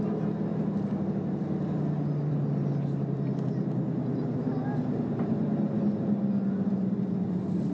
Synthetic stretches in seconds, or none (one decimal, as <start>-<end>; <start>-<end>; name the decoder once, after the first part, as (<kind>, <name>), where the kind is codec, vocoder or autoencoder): none